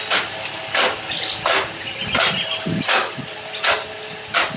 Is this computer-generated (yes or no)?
no